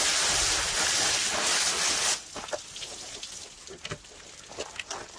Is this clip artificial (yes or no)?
no